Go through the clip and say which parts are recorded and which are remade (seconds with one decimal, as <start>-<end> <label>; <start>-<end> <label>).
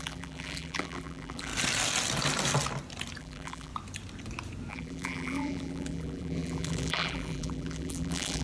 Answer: 0.0-1.5 remade; 1.5-3.2 recorded; 3.2-3.7 remade; 3.7-4.7 recorded; 4.7-8.4 remade